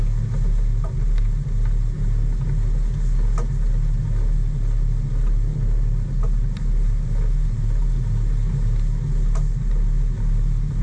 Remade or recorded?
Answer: recorded